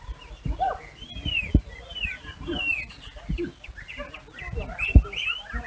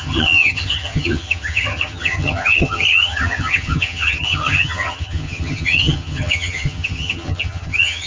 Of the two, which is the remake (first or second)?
second